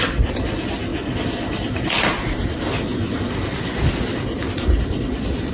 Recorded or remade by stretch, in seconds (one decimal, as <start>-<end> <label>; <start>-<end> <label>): 0.0-0.9 recorded; 0.9-2.6 remade; 2.6-3.0 recorded; 3.0-5.5 remade